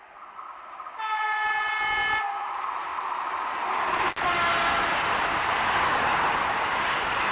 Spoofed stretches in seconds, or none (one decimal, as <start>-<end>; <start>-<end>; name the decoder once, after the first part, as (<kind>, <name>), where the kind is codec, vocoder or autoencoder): none